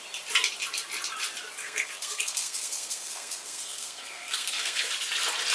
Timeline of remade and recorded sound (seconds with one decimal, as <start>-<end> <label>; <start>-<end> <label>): 0.0-1.6 recorded; 1.6-4.9 remade; 4.9-5.5 recorded